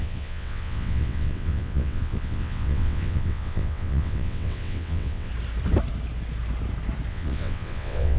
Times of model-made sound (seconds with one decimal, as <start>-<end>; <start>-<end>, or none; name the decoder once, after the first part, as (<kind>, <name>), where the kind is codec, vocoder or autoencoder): 0.0-5.3 (vocoder, WaveNeXt); 7.1-8.2